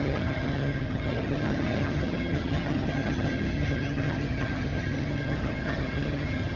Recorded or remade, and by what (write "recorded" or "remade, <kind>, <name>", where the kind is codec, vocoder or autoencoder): remade, vocoder, HiFi-GAN